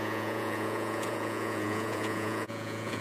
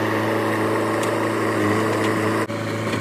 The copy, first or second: first